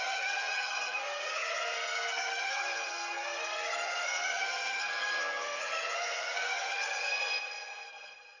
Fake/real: fake